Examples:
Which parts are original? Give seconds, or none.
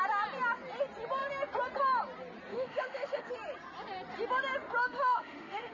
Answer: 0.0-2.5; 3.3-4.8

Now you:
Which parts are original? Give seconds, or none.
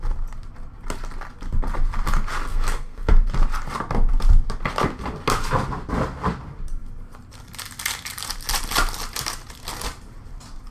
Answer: 0.0-2.5; 3.1-10.7